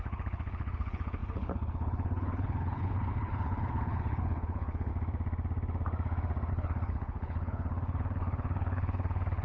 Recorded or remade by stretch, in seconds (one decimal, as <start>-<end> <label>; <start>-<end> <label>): 0.0-4.9 remade; 4.9-6.5 recorded; 6.5-9.4 remade